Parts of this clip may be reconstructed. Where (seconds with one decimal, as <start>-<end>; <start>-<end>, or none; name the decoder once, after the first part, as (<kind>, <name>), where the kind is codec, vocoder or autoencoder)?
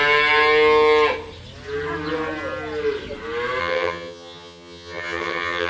3.6-5.7 (vocoder, HiFi-GAN)